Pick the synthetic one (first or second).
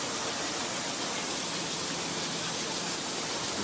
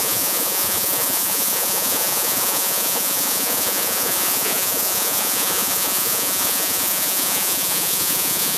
second